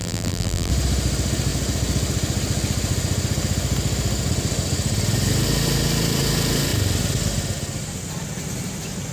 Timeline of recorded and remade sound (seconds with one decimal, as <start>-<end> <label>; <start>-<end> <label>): 0.0-0.7 remade; 0.7-9.1 recorded